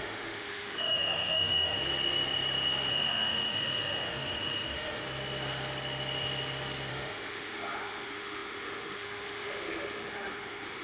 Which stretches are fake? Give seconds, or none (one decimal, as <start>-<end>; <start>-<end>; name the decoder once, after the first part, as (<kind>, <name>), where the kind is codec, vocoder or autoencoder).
0.0-1.8 (autoencoder, DAC-VAE); 2.9-5.0; 6.9-10.8